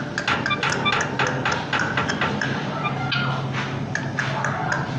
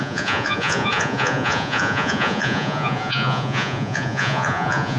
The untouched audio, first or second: first